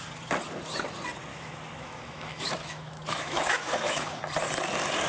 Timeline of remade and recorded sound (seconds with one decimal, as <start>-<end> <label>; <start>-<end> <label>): 0.0-1.3 recorded; 1.3-4.2 remade; 4.2-5.1 recorded